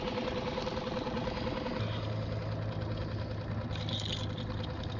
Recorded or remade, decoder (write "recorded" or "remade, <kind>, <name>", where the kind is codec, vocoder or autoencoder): recorded